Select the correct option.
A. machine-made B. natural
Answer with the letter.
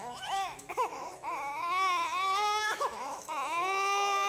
A